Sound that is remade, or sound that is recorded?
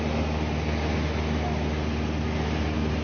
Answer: recorded